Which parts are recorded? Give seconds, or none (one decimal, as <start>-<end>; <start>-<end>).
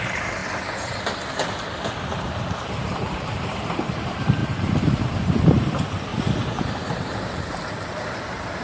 0.4-2.2; 4.4-5.0; 6.1-6.7